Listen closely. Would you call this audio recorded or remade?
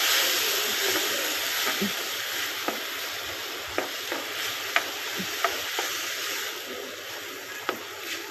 recorded